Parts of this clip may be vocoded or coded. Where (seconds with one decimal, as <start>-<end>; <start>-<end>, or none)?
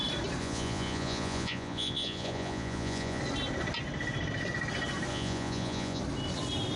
0.4-3.2; 5.1-6.0